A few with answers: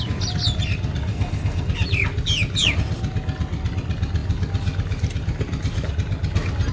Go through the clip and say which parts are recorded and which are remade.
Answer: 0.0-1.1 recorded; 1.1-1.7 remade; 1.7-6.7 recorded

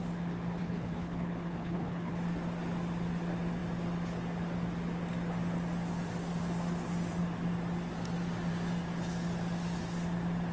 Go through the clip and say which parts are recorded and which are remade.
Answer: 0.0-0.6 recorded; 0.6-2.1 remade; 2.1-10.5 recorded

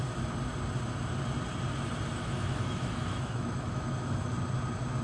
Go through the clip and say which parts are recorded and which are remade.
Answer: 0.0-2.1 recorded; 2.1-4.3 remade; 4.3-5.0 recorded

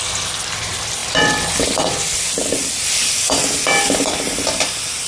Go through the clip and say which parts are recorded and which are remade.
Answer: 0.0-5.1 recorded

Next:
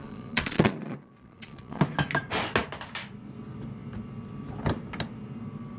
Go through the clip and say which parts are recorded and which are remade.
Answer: 0.0-1.8 remade; 1.8-5.8 recorded

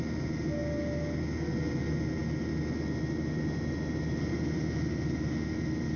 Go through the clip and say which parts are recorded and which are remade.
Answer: 0.0-6.0 recorded

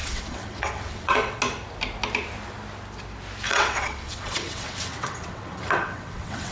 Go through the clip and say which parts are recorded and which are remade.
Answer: 0.0-1.4 remade; 1.4-3.5 recorded; 3.5-6.5 remade

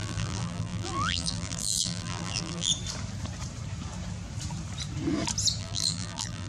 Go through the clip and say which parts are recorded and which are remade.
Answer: 0.0-2.7 remade; 2.7-5.6 recorded; 5.6-6.5 remade